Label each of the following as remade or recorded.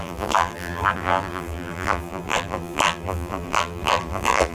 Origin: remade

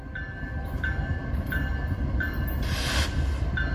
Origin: recorded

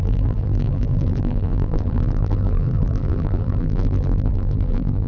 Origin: remade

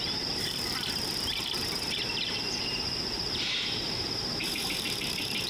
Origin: remade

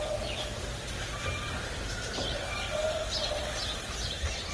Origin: remade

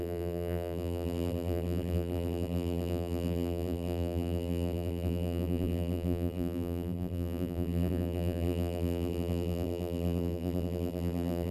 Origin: remade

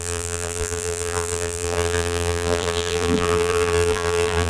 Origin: remade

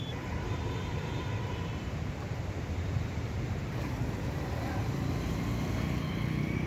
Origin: remade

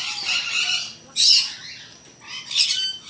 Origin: recorded